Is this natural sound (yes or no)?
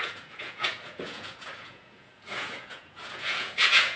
no